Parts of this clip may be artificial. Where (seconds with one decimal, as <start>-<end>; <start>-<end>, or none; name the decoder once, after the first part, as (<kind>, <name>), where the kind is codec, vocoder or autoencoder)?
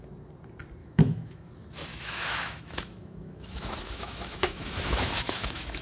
0.8-1.5 (autoencoder, DAC-VAE); 1.9-5.8